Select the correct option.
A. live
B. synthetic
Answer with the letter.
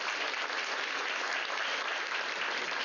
A